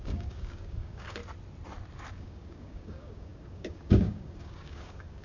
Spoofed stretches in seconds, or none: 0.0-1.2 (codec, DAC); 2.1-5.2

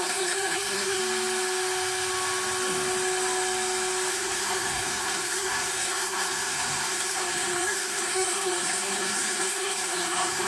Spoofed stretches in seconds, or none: 0.0-1.0 (codec, SNAC); 4.1-10.5

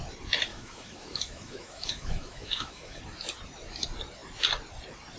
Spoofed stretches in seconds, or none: 0.5-3.0 (autoencoder, DAC-VAE)

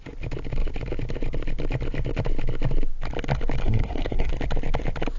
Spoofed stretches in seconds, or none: 3.6-4.3 (codec, SNAC)